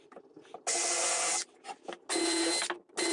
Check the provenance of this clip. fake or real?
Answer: real